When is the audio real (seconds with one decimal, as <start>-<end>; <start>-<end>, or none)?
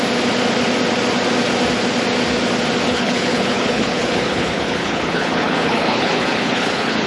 0.0-2.9